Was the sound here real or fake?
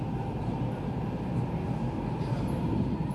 real